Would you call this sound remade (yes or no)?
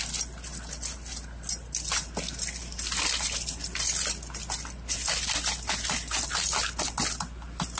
no